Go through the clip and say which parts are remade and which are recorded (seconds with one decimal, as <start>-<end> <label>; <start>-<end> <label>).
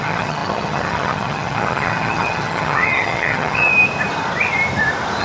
0.0-3.7 remade; 3.7-5.2 recorded